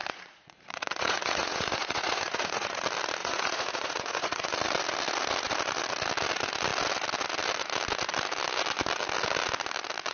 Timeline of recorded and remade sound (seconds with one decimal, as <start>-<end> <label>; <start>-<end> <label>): 0.0-2.8 remade; 2.8-3.2 recorded; 3.2-4.5 remade; 4.5-10.1 recorded